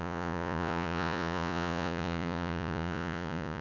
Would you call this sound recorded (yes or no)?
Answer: no